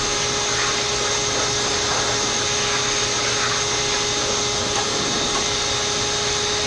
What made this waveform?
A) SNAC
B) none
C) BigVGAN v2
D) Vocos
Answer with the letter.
B